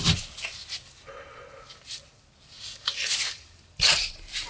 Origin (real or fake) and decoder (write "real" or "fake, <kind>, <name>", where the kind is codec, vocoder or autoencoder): real